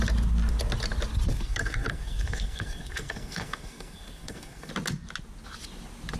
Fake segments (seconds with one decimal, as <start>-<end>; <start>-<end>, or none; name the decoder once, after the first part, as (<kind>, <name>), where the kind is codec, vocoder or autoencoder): 1.3-4.7 (codec, SNAC)